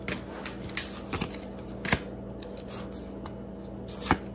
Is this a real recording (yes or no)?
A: yes